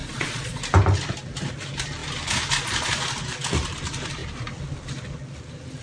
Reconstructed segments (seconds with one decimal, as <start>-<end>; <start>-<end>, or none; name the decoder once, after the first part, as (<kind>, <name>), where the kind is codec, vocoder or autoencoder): 0.0-0.6 (vocoder, Vocos)